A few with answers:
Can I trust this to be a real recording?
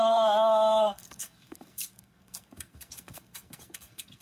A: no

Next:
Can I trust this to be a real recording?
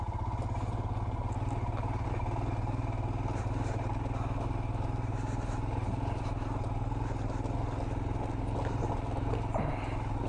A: yes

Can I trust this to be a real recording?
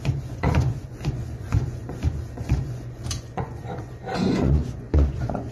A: no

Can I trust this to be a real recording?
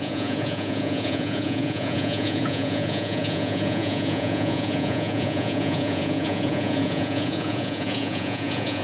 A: no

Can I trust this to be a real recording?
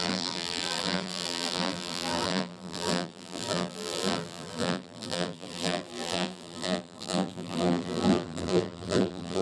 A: no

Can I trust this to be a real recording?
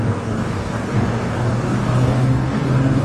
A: no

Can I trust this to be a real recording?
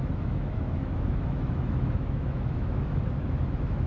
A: no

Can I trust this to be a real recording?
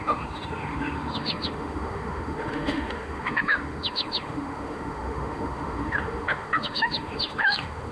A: no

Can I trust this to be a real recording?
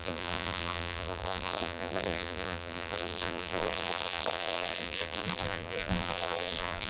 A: no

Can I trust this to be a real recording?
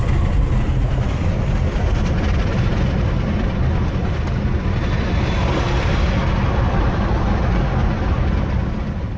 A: yes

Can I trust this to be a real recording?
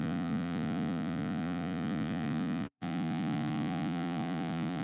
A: no